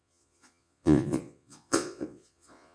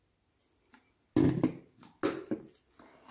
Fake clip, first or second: first